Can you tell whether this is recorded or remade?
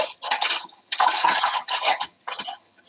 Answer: remade